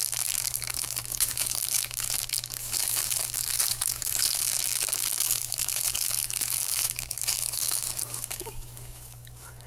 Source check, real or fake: fake